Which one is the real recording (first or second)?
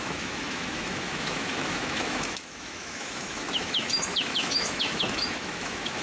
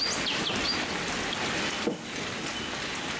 second